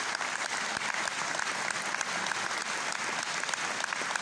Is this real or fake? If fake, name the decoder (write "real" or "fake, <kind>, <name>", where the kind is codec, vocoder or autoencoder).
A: real